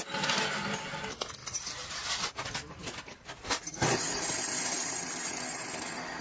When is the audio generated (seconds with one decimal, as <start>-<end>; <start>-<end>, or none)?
none